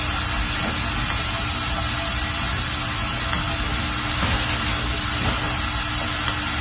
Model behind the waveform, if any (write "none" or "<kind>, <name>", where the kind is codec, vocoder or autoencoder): none